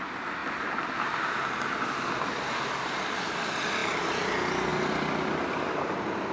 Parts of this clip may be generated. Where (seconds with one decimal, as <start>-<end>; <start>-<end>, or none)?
none